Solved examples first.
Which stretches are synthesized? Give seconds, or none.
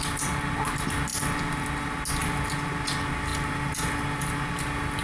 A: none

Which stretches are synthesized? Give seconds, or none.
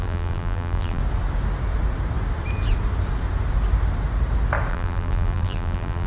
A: 0.0-1.0 (vocoder, BigVGAN v2); 4.7-6.1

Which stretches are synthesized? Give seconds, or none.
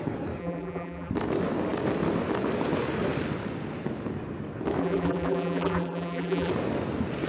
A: 0.4-1.1 (vocoder, BigVGAN v2); 4.8-6.5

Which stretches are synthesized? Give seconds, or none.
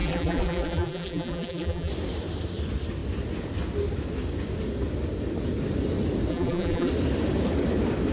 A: 0.0-1.9 (vocoder, BigVGAN v2); 6.3-6.9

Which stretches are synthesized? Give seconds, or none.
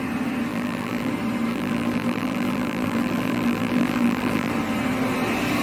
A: 0.5-1.1 (vocoder, BigVGAN v2); 1.5-4.5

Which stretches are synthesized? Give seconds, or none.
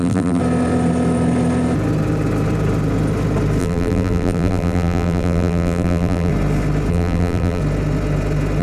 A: 0.0-0.4 (vocoder, BigVGAN v2); 3.6-6.3; 6.9-7.6